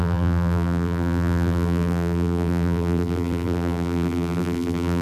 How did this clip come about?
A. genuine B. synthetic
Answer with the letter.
B